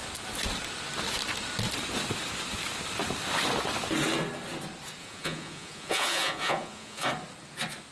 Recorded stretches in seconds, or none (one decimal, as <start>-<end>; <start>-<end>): 0.0-5.0; 7.1-7.9